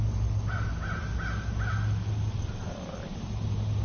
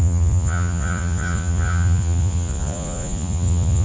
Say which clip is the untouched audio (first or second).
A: first